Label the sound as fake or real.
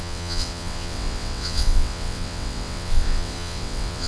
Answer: fake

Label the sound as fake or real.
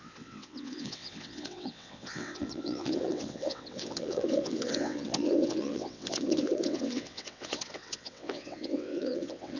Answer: fake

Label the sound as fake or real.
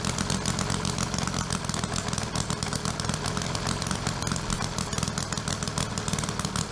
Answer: real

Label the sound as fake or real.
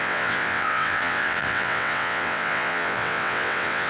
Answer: fake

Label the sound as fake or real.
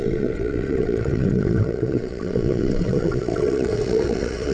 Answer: fake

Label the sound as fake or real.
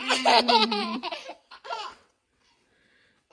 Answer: fake